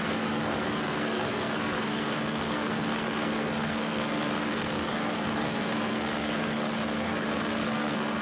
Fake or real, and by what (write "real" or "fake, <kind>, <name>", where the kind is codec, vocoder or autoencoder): fake, codec, SNAC